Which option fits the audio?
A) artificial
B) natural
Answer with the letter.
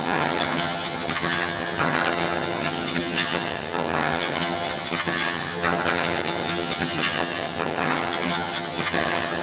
A